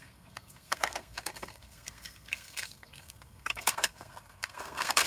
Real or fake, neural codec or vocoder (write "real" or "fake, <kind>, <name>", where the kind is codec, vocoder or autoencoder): fake, codec, SNAC